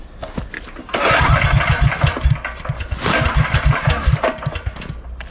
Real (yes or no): yes